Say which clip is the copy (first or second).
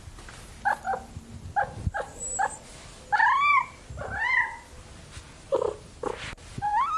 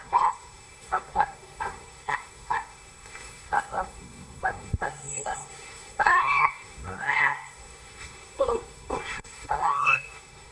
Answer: second